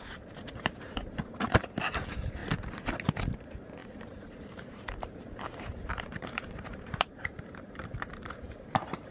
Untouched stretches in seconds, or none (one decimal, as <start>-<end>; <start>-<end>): 2.4-3.3; 3.8-4.3